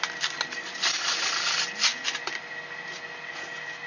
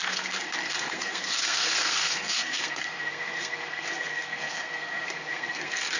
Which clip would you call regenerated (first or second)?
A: second